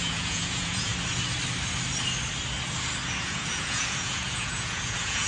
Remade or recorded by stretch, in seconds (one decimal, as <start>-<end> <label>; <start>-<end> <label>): 0.0-0.9 remade; 0.9-3.2 recorded; 3.2-5.3 remade